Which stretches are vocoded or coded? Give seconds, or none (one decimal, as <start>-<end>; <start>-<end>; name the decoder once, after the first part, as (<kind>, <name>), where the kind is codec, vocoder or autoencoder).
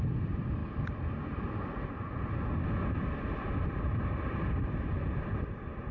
none